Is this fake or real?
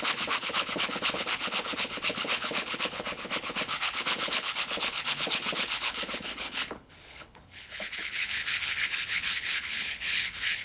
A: fake